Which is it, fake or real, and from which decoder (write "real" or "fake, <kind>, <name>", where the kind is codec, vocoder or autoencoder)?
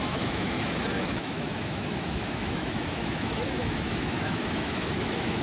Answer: fake, autoencoder, DAC-VAE